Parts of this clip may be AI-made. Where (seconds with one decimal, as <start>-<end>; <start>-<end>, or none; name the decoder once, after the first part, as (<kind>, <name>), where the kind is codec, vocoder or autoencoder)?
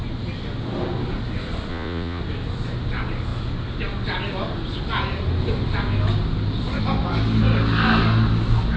1.7-2.2 (vocoder, Vocos)